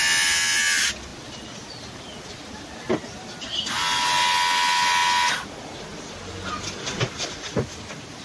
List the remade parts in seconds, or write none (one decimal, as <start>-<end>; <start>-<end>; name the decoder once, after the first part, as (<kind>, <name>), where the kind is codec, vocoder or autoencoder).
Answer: none